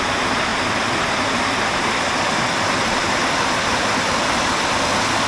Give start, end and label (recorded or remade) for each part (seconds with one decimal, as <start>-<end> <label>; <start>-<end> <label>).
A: 0.0-5.3 recorded